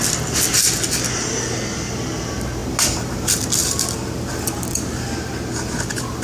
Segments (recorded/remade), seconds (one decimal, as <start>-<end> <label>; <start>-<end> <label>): 0.0-6.2 recorded